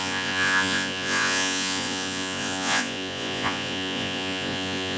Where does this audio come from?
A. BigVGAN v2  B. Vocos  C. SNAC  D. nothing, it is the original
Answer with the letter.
B